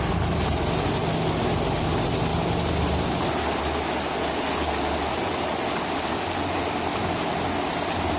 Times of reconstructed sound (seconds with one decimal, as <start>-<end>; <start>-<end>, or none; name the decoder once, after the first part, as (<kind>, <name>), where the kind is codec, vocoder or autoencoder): none